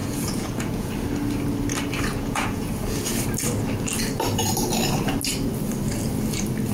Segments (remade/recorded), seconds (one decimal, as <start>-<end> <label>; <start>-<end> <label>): 0.0-0.9 remade; 0.9-2.1 recorded; 2.1-2.7 remade; 2.7-6.7 recorded